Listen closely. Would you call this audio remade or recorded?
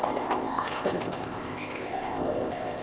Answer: remade